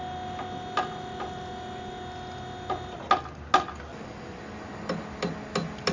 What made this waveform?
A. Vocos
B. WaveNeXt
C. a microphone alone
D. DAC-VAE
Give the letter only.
C